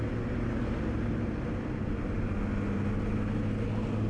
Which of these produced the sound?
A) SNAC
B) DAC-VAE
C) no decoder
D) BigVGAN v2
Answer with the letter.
C